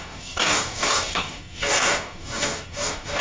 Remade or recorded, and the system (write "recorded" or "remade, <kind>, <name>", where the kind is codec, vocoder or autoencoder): remade, codec, DAC